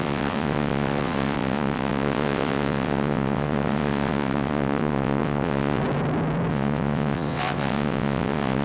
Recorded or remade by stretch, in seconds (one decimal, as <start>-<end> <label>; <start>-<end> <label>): 0.0-5.8 remade; 5.8-6.5 recorded; 6.5-8.6 remade